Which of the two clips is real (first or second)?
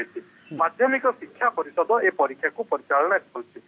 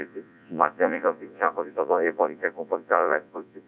first